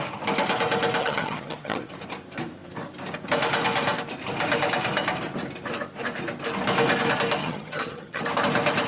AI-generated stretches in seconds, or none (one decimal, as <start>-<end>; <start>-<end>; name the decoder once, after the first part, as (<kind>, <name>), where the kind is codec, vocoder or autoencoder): 1.0-1.9 (vocoder, HiFi-GAN); 7.4-8.2